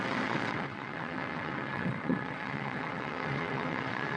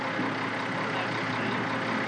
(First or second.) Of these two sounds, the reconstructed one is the first